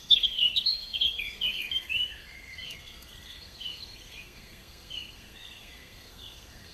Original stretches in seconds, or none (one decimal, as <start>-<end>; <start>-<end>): none